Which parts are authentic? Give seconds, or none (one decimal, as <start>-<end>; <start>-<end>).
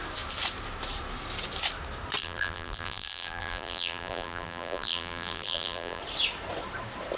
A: 0.0-2.2; 6.0-7.2